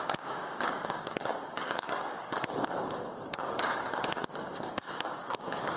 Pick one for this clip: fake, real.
fake